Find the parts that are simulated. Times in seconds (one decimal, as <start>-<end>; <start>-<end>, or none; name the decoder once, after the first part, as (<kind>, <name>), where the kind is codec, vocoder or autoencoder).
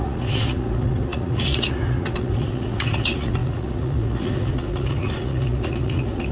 0.0-6.3 (vocoder, Vocos)